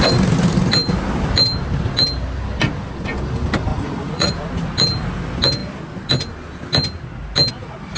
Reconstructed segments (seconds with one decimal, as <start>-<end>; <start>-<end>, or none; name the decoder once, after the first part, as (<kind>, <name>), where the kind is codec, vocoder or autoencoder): 3.7-4.3 (vocoder, Vocos)